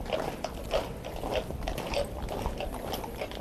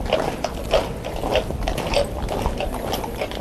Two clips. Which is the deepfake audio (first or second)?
first